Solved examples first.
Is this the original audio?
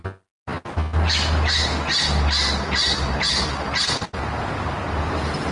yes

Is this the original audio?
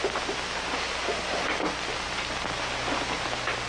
yes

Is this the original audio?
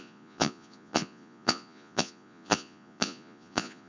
no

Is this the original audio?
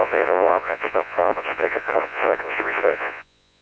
no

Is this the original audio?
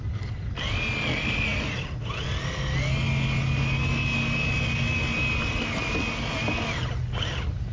yes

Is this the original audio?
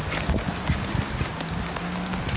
yes